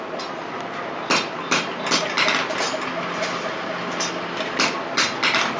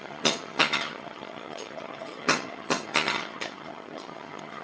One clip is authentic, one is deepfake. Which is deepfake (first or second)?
second